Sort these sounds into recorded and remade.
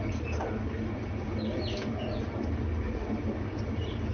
recorded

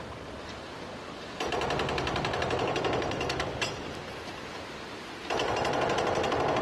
recorded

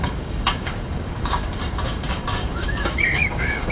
remade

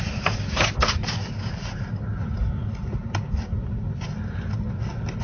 recorded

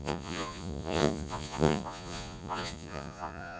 remade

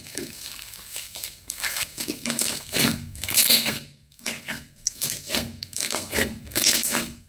remade